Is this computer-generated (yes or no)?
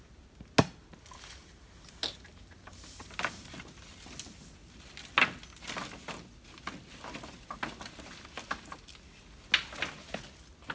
no